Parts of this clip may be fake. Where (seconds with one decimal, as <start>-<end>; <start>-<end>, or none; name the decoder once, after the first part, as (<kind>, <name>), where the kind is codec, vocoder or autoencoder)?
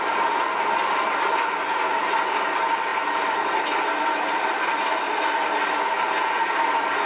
none